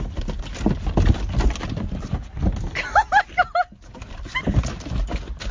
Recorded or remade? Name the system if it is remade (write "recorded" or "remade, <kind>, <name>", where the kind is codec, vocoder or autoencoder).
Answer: recorded